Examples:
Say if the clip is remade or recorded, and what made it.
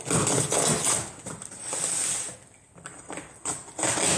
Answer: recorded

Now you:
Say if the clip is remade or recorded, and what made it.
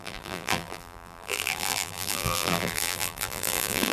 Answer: remade, vocoder, BigVGAN v2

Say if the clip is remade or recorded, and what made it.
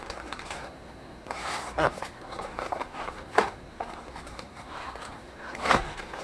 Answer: remade, codec, SNAC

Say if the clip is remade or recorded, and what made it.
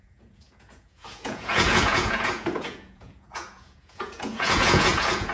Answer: remade, vocoder, Vocos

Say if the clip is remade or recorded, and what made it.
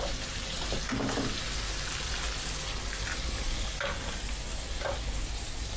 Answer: recorded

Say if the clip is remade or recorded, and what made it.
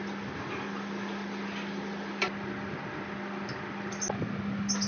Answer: recorded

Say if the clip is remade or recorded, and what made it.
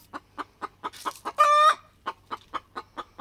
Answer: recorded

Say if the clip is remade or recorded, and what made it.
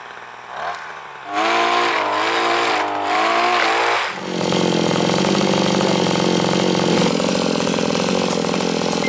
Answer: recorded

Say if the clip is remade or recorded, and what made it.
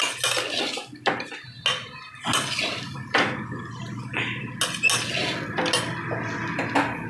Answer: recorded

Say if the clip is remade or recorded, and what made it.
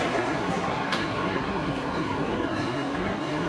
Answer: remade, codec, SNAC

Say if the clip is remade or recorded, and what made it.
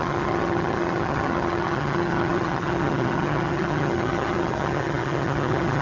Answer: remade, vocoder, HiFi-GAN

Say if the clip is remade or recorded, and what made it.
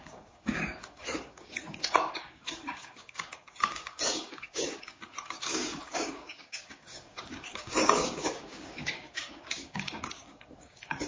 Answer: remade, codec, DAC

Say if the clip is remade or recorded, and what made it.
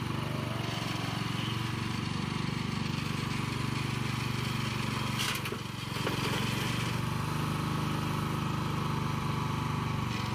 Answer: recorded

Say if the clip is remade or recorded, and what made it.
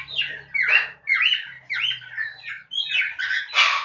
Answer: recorded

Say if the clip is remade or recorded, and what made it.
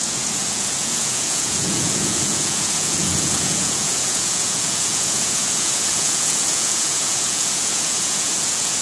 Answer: remade, vocoder, Vocos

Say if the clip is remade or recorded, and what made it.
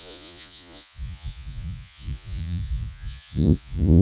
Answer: remade, vocoder, Vocos